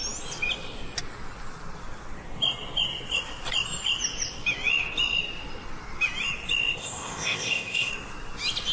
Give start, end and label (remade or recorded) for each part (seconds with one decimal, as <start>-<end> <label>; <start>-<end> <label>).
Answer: 0.0-6.8 recorded; 6.8-7.9 remade; 7.9-8.7 recorded